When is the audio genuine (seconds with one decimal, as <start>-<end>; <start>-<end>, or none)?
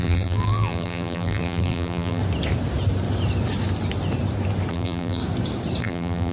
2.2-4.7; 5.2-5.8